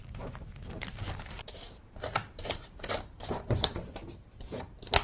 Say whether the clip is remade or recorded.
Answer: remade